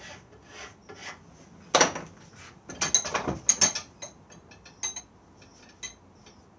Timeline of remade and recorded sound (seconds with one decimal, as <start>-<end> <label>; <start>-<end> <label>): 0.0-6.6 recorded